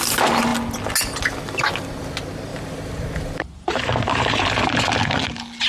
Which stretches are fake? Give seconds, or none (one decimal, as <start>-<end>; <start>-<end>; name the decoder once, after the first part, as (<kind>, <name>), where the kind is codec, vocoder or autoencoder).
2.5-4.8 (vocoder, BigVGAN v2)